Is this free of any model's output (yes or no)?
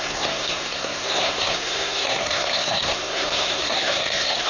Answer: no